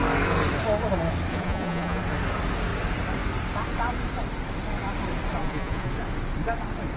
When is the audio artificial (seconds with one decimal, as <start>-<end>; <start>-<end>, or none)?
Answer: 1.3-2.0; 5.4-5.9